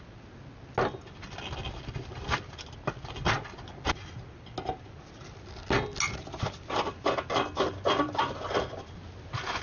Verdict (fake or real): real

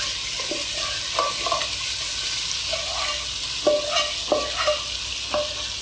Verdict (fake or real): real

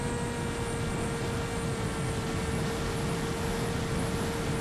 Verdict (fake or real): real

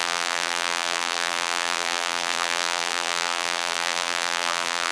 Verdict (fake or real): fake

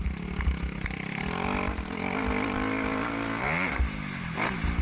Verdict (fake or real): real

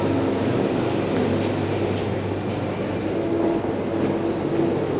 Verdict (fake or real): real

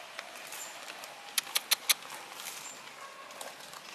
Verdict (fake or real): real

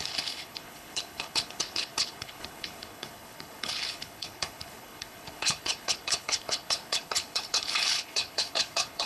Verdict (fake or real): fake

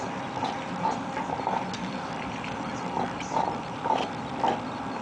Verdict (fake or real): real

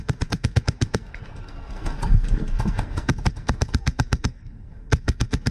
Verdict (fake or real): fake